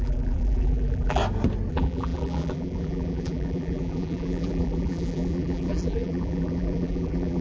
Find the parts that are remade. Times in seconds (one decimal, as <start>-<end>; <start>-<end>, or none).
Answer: 0.0-1.2; 1.7-7.4